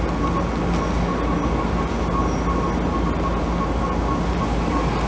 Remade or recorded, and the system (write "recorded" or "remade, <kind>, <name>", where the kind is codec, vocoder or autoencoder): recorded